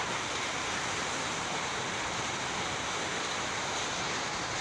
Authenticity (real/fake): fake